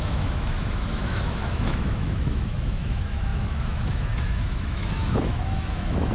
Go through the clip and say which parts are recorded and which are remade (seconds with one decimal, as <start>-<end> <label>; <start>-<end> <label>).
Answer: 0.0-6.1 remade

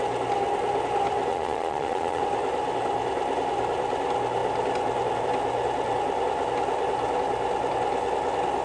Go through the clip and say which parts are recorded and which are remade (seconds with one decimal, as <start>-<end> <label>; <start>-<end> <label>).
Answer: 0.0-1.3 recorded; 1.3-2.2 remade; 2.2-8.6 recorded

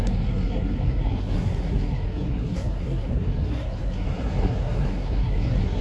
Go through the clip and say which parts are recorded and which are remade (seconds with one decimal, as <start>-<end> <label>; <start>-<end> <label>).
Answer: 0.0-5.8 remade

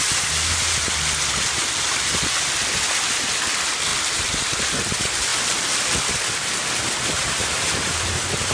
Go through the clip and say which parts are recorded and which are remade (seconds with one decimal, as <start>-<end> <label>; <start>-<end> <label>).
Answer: 0.0-3.9 recorded; 3.9-4.8 remade; 4.8-7.2 recorded; 7.2-8.5 remade

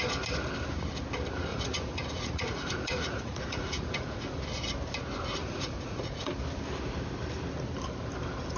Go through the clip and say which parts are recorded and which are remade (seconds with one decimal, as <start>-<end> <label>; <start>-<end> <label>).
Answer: 0.0-1.5 recorded; 1.5-4.4 remade; 4.4-5.4 recorded; 5.4-6.3 remade; 6.3-8.6 recorded

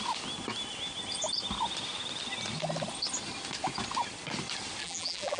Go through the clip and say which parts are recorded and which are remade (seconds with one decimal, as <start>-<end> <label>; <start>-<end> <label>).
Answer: 0.0-4.8 recorded; 4.8-5.4 remade